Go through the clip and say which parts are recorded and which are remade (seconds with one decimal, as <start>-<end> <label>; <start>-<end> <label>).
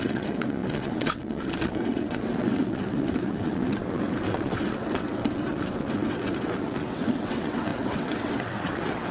0.0-9.1 remade